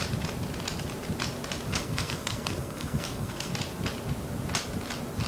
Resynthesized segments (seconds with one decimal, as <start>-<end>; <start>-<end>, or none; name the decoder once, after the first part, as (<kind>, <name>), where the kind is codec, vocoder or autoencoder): 1.7-3.5 (codec, SNAC)